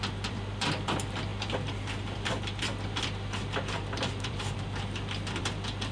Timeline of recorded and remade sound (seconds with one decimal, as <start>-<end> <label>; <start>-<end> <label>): 0.0-5.9 remade